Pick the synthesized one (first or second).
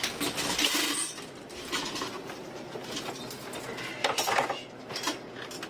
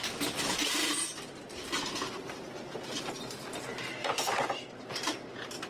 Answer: second